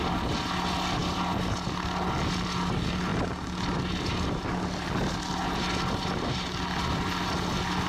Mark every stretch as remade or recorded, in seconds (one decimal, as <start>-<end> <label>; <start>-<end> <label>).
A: 0.0-7.9 recorded